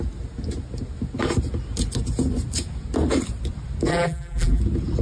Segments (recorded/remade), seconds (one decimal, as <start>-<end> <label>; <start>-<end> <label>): 0.0-3.9 recorded; 3.9-4.6 remade; 4.6-5.0 recorded